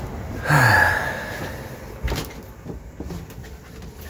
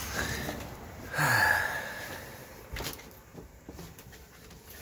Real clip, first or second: first